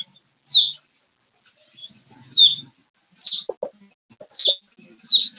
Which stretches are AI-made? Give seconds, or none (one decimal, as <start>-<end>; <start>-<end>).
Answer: 1.8-2.4